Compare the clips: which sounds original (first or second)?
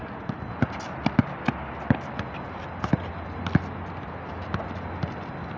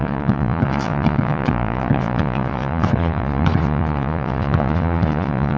first